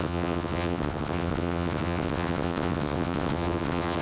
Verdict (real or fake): fake